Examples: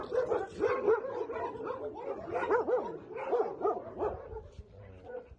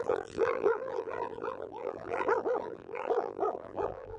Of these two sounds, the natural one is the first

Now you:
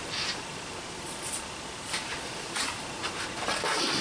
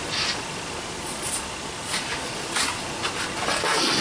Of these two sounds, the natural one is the second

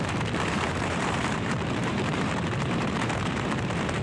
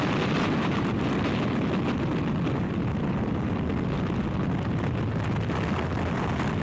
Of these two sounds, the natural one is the second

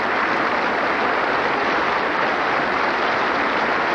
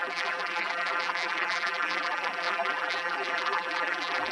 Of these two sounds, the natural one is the first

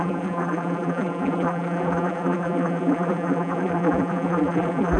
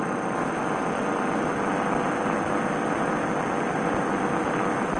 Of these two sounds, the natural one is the second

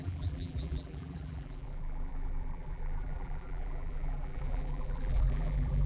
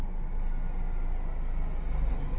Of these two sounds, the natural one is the second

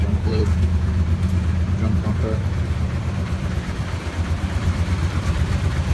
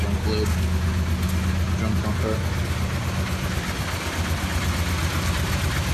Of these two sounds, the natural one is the second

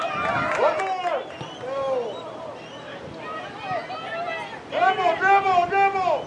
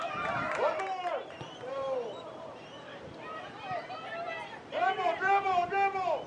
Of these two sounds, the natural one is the first